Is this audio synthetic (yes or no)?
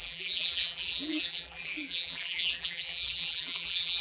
yes